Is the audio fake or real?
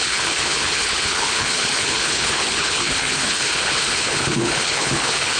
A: fake